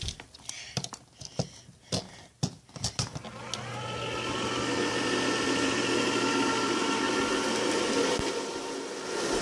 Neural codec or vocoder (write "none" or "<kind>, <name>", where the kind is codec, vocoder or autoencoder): none